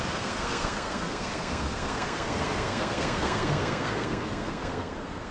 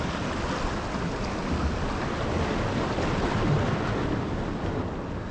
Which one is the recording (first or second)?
second